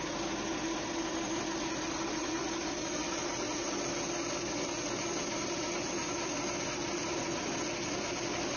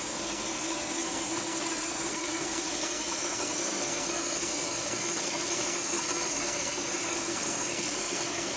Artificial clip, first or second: second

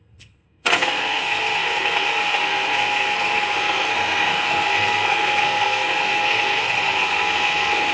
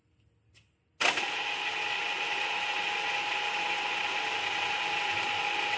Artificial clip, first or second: first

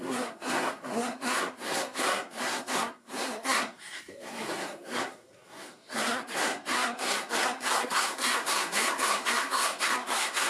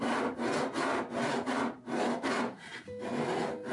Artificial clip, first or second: first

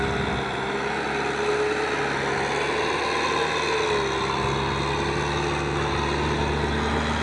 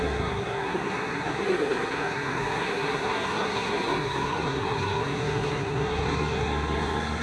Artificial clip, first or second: second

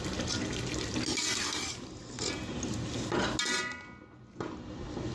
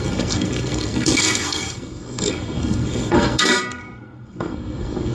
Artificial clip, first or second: second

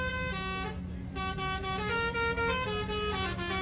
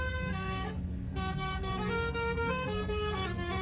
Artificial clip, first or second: second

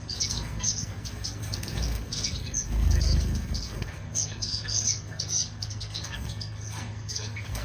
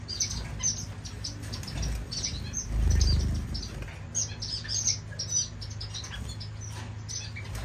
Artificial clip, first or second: first